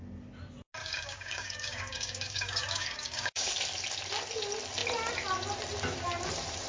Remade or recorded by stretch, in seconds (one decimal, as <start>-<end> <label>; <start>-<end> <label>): 0.0-0.8 recorded; 0.8-3.5 remade; 3.5-6.7 recorded